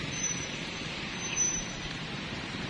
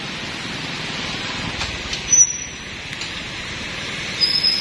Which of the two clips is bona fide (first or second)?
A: second